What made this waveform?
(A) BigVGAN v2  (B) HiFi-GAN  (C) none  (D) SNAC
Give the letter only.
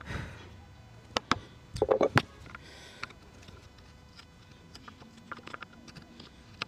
C